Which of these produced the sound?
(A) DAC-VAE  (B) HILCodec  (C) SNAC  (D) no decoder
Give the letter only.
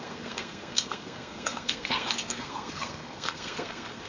C